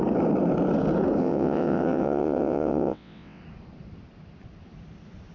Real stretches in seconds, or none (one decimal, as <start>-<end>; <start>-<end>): 0.0-1.2; 3.4-5.3